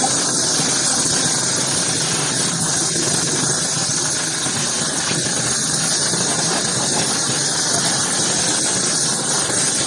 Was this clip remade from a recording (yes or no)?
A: no